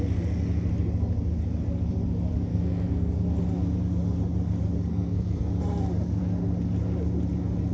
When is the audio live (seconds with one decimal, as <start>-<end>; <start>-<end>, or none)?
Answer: 0.0-2.5; 3.1-4.9; 5.5-7.7